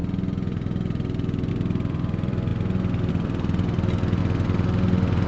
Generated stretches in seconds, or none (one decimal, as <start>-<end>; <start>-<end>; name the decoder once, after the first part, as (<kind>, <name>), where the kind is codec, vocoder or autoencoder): 1.5-2.5 (vocoder, BigVGAN v2); 3.1-4.2